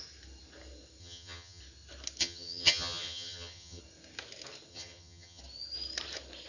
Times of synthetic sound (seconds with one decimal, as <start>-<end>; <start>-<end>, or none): 1.0-1.6; 2.2-3.8; 4.7-5.4